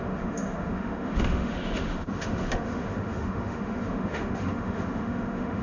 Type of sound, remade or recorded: remade